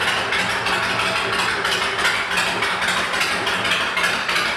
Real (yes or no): yes